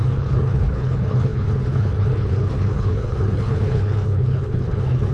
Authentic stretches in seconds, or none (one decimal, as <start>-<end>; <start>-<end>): none